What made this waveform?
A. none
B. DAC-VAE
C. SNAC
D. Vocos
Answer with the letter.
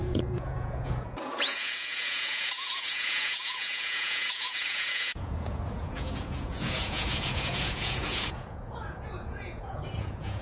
D